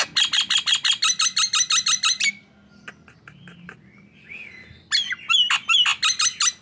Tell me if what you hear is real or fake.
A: real